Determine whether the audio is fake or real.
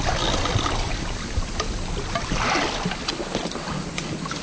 real